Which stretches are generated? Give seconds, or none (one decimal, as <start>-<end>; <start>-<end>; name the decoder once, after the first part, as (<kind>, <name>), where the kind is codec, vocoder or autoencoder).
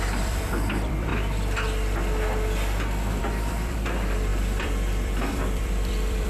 0.0-1.1 (vocoder, BigVGAN v2); 3.2-6.3